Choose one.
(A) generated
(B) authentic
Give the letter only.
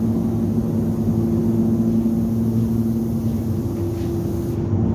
B